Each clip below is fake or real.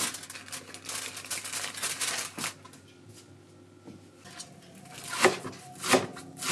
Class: real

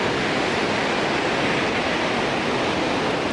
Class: real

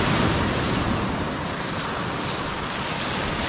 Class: real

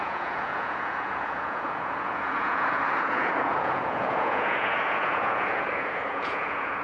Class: fake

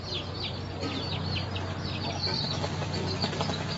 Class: real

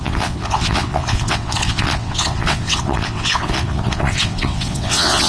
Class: fake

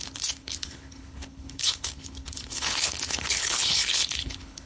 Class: fake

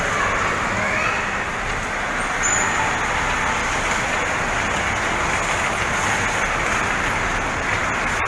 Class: real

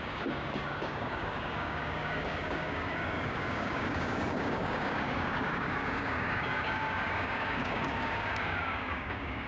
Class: fake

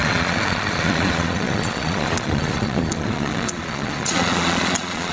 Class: fake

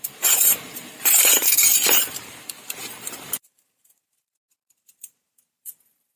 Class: fake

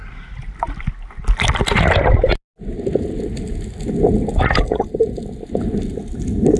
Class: real